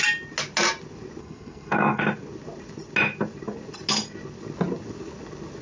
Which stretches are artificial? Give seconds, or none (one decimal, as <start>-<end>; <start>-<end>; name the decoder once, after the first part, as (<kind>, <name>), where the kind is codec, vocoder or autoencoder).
1.2-2.0 (codec, SNAC)